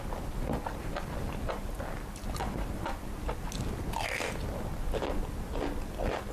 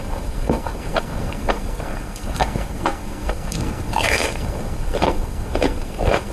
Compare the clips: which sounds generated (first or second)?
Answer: second